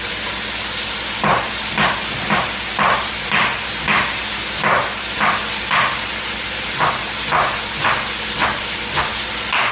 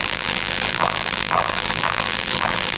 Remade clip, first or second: second